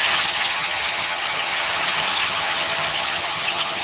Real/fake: fake